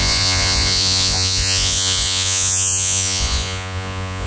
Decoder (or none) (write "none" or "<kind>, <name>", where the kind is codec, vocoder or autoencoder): vocoder, Vocos